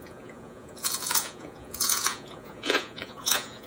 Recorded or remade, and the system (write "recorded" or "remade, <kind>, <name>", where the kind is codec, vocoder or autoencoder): remade, vocoder, Vocos